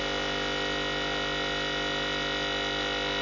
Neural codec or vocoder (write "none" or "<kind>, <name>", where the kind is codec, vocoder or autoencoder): none